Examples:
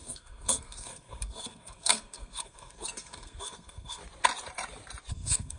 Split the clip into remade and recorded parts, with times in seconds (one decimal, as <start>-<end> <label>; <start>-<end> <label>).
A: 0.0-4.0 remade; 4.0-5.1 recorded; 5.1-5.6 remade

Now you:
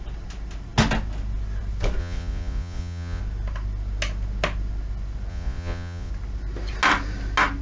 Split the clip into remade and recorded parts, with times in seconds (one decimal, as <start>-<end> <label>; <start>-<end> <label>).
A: 0.0-2.0 recorded; 2.0-3.2 remade; 3.2-5.3 recorded; 5.3-6.1 remade; 6.1-7.6 recorded

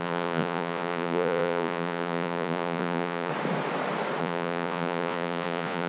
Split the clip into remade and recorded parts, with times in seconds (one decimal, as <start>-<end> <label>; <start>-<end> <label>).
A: 0.0-3.3 remade; 3.3-4.2 recorded; 4.2-5.9 remade